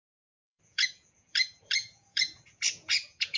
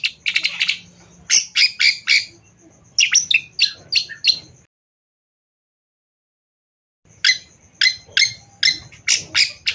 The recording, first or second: second